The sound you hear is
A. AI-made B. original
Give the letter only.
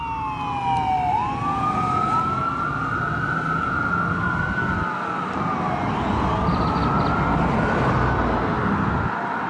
B